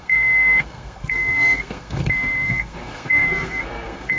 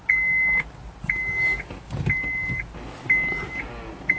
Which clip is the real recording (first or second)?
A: second